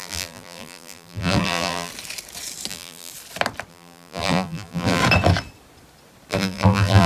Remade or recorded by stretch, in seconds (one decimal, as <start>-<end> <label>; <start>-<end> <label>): 0.0-1.9 remade; 1.9-2.7 recorded; 2.7-3.1 remade; 3.1-3.7 recorded; 3.7-5.0 remade; 5.0-6.3 recorded; 6.3-7.1 remade